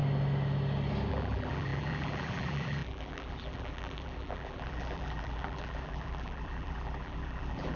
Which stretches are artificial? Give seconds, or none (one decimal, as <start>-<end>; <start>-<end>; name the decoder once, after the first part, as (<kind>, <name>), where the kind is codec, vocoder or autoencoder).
1.1-7.8 (vocoder, BigVGAN v2)